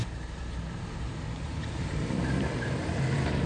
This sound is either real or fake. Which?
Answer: fake